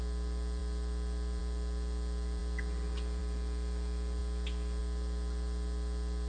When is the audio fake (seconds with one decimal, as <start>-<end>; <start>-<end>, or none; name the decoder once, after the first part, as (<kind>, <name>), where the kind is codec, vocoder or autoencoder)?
none